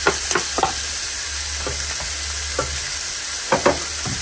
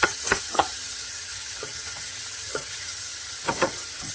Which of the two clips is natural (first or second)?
first